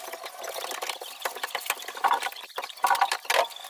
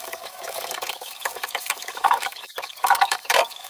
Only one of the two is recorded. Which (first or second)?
first